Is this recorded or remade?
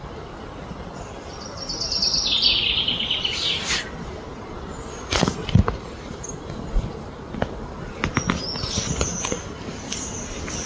recorded